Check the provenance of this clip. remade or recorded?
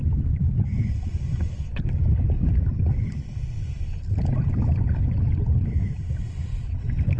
recorded